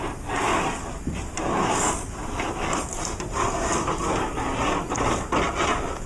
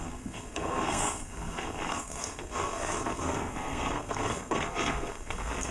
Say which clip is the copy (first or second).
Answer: second